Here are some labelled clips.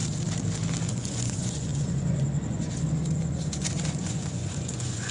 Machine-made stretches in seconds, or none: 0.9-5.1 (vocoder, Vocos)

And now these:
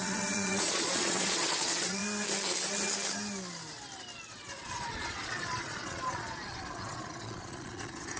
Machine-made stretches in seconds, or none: 0.0-2.0 (vocoder, Vocos); 4.3-8.2

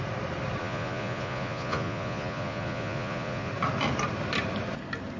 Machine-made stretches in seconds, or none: 0.6-3.5 (vocoder, Vocos)

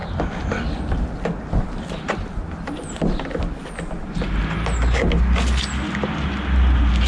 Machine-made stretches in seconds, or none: none